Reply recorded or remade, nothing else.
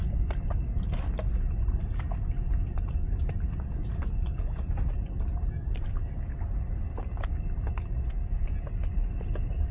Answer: recorded